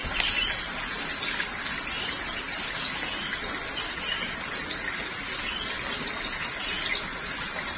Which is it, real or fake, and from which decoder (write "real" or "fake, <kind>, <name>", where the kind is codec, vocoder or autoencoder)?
real